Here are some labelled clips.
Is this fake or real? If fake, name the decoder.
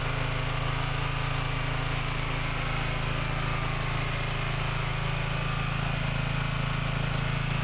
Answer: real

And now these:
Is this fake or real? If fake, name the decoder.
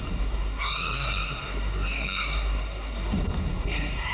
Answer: fake, codec, SNAC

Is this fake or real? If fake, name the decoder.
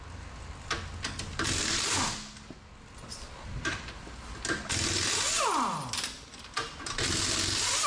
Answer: real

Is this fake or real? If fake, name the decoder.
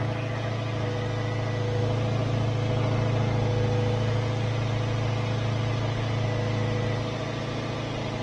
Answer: real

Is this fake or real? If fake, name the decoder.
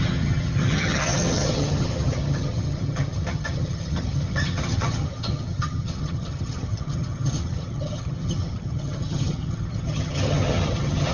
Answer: fake, vocoder, HiFi-GAN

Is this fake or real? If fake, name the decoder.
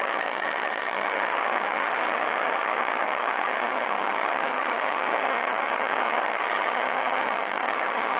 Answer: fake, vocoder, HiFi-GAN